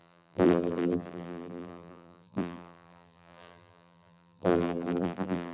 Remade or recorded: remade